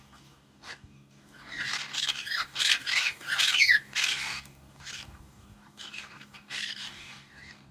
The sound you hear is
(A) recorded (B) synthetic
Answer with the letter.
B